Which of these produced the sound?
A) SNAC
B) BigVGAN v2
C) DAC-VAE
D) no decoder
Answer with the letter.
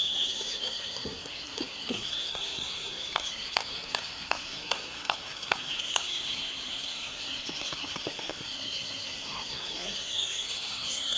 A